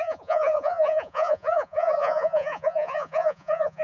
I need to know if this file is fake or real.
fake